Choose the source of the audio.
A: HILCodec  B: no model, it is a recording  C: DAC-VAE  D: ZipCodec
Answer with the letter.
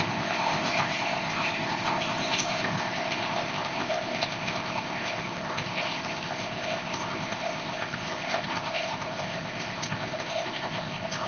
D